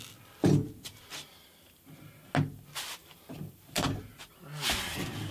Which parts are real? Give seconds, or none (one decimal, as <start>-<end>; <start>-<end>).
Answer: 0.0-3.0; 4.0-5.3